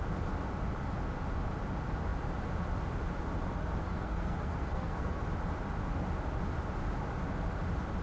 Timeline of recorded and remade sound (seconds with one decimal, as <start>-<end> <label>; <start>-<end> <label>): 0.0-3.8 recorded; 3.8-5.2 remade; 5.2-8.0 recorded